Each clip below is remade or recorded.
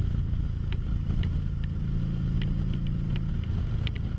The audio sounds recorded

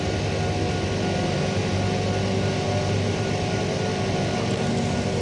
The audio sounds recorded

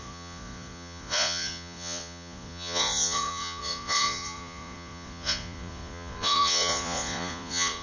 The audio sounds remade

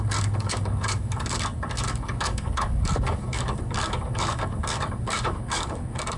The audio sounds remade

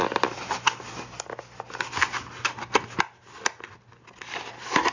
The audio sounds recorded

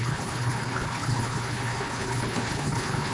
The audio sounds remade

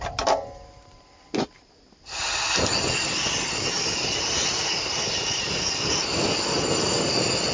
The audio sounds recorded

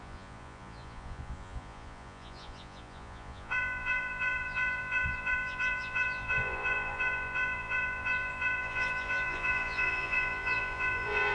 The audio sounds remade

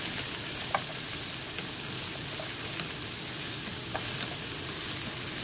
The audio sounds recorded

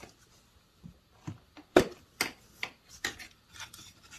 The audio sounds recorded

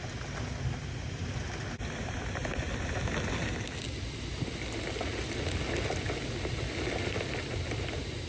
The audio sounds recorded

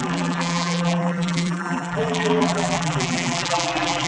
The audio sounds remade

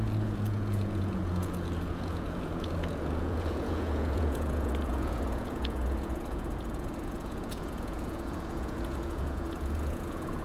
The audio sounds remade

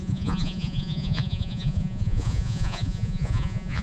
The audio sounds remade